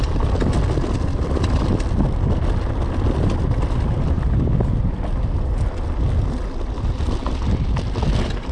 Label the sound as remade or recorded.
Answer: recorded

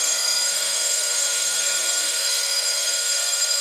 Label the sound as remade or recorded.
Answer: remade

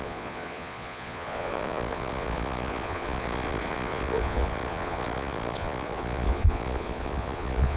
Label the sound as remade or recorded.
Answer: remade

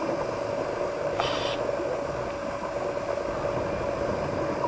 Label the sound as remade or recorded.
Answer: recorded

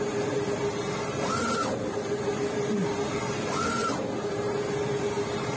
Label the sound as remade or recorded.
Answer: recorded